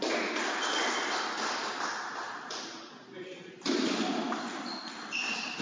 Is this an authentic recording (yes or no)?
yes